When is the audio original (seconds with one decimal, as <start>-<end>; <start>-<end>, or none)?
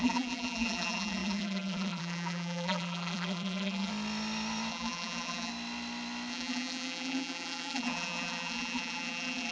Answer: 3.9-4.7; 5.5-6.3